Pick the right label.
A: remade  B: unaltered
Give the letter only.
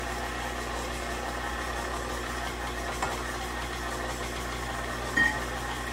B